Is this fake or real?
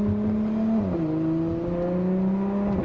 real